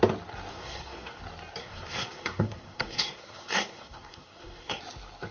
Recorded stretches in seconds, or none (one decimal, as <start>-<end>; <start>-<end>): 0.0-0.5; 1.2-1.6; 4.8-5.3